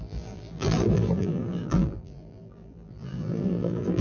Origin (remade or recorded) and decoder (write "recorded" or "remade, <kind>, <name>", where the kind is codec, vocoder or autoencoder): remade, vocoder, BigVGAN v2